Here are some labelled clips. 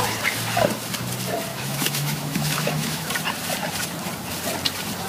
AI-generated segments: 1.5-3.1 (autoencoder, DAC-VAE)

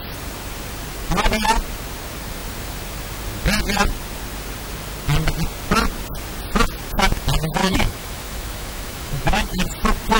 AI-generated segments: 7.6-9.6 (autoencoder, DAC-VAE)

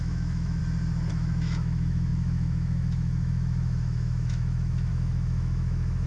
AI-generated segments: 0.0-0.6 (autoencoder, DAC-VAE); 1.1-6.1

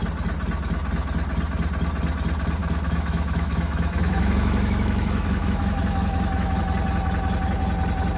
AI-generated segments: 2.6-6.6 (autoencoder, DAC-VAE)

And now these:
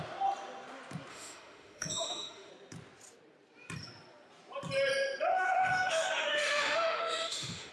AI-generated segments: 1.1-2.5 (autoencoder, DAC-VAE); 5.3-7.7

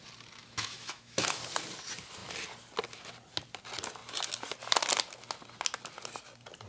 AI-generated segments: 0.4-1.4 (autoencoder, DAC-VAE)

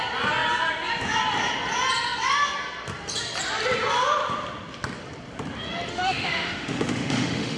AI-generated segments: 5.9-7.6 (autoencoder, DAC-VAE)